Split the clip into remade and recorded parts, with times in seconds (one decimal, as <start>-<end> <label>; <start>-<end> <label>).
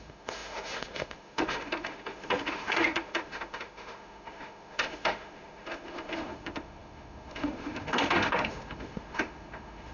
0.0-9.9 remade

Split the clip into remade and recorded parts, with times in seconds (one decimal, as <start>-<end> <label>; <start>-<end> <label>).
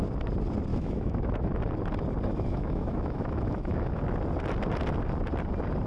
0.0-0.7 recorded; 0.7-1.5 remade; 1.5-2.3 recorded; 2.3-4.0 remade; 4.0-5.9 recorded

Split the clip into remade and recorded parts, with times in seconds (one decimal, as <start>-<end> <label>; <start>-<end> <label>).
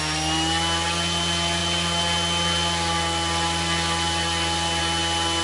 0.0-5.4 recorded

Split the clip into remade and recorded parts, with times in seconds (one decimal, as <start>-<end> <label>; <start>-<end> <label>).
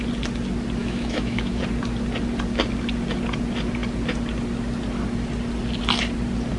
0.0-0.8 recorded; 0.8-1.6 remade; 1.6-6.6 recorded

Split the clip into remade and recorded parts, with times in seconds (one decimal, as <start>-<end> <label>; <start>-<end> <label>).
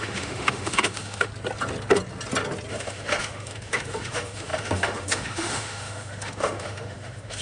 0.0-1.3 remade; 1.3-2.7 recorded; 2.7-7.4 remade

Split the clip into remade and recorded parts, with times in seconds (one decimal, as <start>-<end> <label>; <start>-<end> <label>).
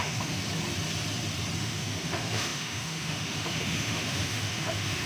0.0-0.4 remade; 0.4-1.6 recorded; 1.6-5.1 remade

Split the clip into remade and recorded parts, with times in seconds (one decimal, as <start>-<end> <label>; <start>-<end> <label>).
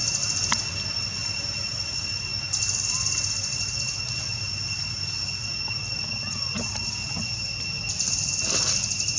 0.0-9.2 recorded